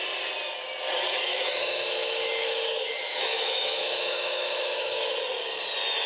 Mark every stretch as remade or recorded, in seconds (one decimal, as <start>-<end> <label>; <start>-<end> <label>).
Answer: 0.0-1.3 recorded; 1.3-5.0 remade; 5.0-6.1 recorded